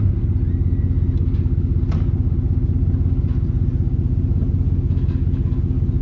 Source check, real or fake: real